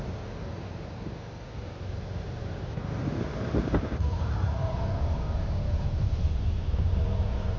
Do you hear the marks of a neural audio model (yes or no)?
no